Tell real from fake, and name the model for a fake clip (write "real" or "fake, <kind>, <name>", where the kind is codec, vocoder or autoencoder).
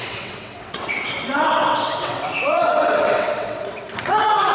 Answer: fake, vocoder, WaveNeXt